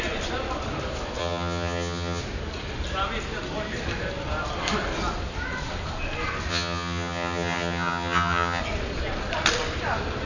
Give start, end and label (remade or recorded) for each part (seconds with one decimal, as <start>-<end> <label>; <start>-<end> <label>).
0.0-1.2 recorded; 1.2-2.2 remade; 2.2-6.5 recorded; 6.5-8.6 remade; 8.6-10.3 recorded